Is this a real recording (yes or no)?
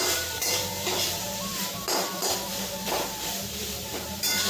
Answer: no